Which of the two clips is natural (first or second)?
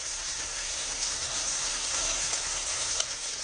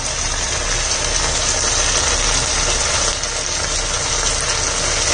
second